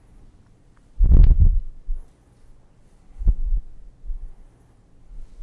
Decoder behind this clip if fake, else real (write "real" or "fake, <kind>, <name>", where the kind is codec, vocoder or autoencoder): real